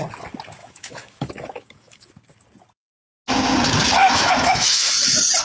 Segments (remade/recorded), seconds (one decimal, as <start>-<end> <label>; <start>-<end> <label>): 0.0-0.6 recorded; 0.6-2.1 remade; 2.1-4.0 recorded; 4.0-4.9 remade; 4.9-5.4 recorded